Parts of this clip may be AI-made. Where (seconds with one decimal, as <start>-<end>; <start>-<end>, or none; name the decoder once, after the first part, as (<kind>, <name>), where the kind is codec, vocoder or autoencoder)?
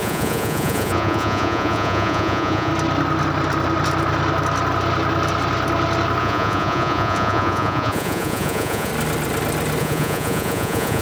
0.0-2.7 (vocoder, Vocos); 6.2-8.9; 9.8-11.0